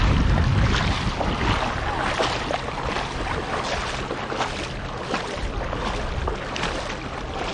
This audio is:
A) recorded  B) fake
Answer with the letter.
A